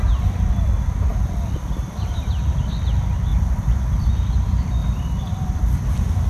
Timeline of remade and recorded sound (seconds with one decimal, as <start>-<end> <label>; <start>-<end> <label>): 0.0-1.1 recorded; 1.1-2.3 remade; 2.3-3.3 recorded; 3.3-4.1 remade; 4.1-4.8 recorded; 4.8-6.3 remade